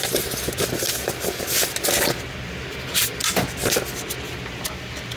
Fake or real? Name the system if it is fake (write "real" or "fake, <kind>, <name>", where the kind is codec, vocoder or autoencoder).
real